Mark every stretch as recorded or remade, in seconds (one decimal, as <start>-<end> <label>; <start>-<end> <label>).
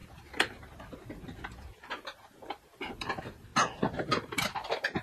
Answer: 0.0-3.5 remade; 3.5-4.1 recorded; 4.1-5.0 remade